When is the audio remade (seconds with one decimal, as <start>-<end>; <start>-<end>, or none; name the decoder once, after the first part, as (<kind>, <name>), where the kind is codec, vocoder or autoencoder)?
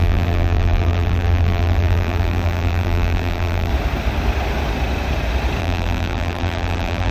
0.0-3.7 (vocoder, BigVGAN v2); 5.6-7.1